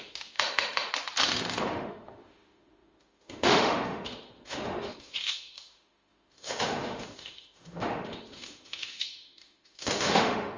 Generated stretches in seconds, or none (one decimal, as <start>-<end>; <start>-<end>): 0.0-0.9; 1.7-10.6